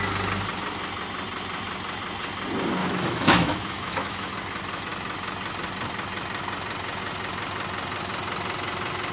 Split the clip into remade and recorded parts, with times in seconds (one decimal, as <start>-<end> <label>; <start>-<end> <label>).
0.0-2.8 recorded; 2.8-4.3 remade; 4.3-9.1 recorded